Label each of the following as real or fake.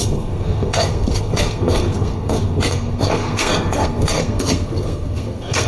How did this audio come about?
fake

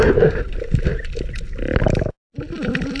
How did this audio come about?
real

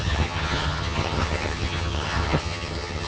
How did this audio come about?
fake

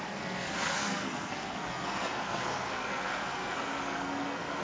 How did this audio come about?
fake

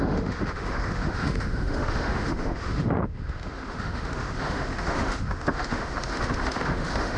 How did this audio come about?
fake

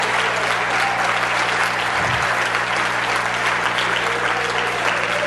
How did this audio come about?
real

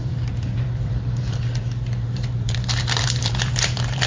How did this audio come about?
fake